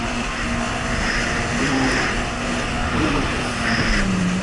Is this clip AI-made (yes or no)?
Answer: no